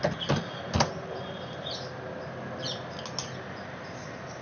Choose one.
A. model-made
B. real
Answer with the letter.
B